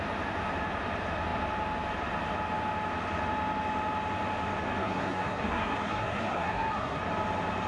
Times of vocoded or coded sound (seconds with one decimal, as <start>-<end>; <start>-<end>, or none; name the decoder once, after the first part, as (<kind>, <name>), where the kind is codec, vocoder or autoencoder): 4.8-7.0 (codec, SNAC)